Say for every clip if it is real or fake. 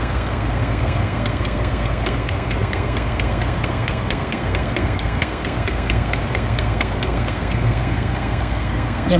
fake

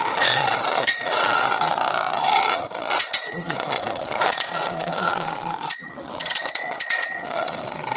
fake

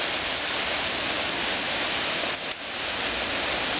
real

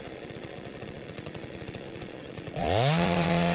fake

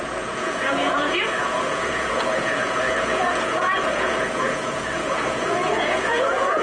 fake